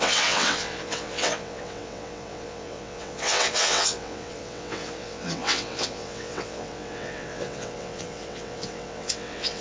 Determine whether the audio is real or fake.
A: fake